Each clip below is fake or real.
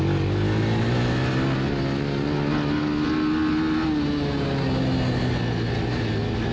real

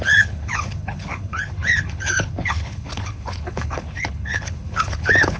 fake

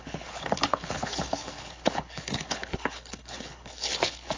fake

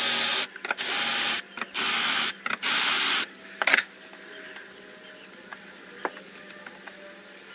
real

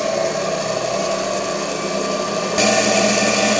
real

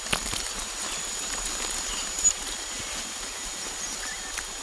real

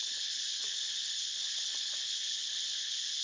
fake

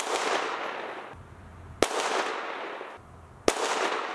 real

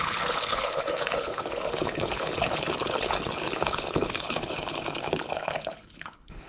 fake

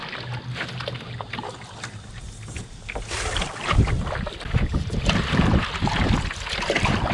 real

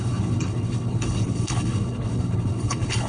fake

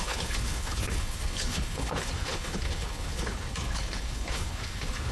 fake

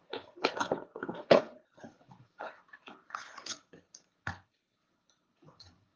fake